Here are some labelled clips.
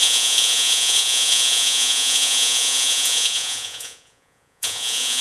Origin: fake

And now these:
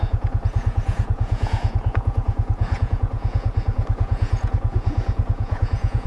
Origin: fake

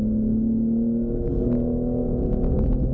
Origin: real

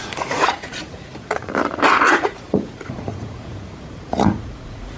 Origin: fake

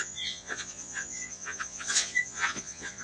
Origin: fake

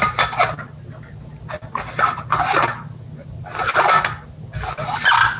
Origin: real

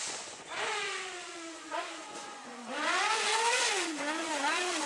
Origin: fake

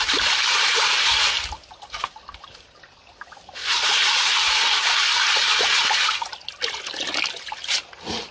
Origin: real